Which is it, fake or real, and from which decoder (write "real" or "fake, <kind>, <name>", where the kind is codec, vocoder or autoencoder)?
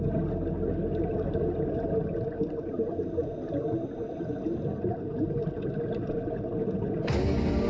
real